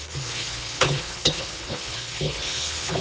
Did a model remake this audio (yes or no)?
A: yes